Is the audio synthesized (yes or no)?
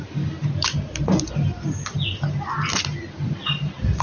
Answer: no